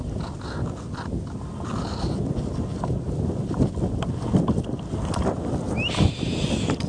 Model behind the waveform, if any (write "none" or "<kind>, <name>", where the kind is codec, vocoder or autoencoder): none